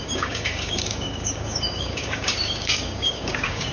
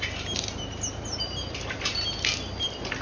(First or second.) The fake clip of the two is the first